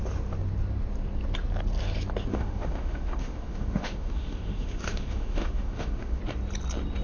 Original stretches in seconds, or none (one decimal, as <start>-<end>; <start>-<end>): 0.0-2.3; 6.2-7.0